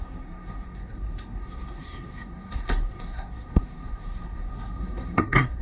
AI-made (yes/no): yes